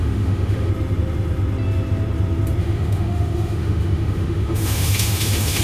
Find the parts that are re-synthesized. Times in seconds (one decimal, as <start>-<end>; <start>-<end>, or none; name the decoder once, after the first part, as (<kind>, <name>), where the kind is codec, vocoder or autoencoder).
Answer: 0.0-0.7 (autoencoder, DAC-VAE); 2.6-5.6